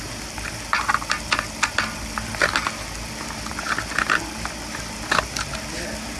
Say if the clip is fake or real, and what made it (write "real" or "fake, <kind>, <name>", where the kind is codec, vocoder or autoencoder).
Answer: real